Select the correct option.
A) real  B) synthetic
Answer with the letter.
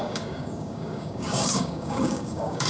B